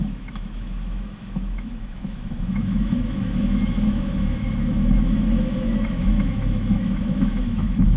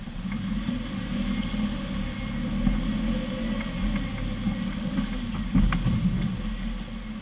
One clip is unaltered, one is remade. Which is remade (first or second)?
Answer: first